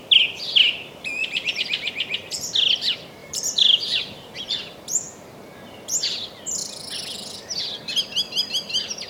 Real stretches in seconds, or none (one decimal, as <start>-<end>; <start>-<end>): 0.0-1.2; 1.9-3.2; 4.3-9.1